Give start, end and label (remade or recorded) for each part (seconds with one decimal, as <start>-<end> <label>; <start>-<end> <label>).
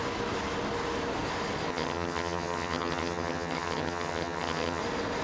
0.0-1.7 recorded; 1.7-4.8 remade; 4.8-5.2 recorded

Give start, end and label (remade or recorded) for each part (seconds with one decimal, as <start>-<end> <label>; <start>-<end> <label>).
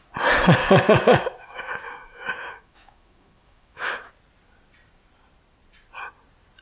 0.0-0.6 recorded; 0.6-4.1 remade; 4.1-6.6 recorded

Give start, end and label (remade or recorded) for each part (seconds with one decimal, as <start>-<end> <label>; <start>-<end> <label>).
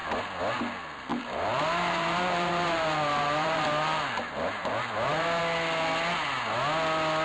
0.0-1.1 recorded; 1.1-5.4 remade; 5.4-7.2 recorded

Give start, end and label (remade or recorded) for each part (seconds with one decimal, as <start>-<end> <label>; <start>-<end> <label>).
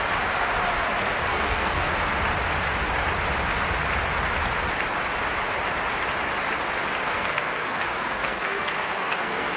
0.0-1.3 recorded; 1.3-1.9 remade; 1.9-7.0 recorded; 7.0-9.6 remade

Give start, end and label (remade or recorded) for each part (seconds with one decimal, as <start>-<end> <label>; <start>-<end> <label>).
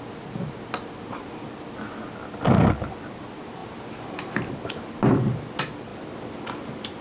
0.0-7.0 recorded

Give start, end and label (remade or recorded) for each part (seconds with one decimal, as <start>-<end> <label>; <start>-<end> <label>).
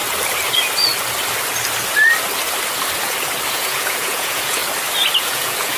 0.0-3.5 recorded; 3.5-4.6 remade; 4.6-5.2 recorded; 5.2-5.8 remade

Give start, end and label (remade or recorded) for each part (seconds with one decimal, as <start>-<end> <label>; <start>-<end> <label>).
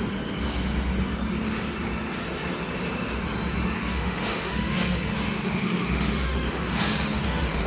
0.0-3.8 recorded; 3.8-7.7 remade